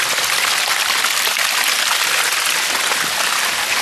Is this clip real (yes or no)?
yes